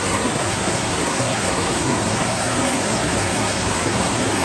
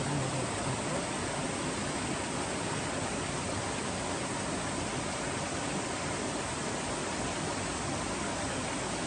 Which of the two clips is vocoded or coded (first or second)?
first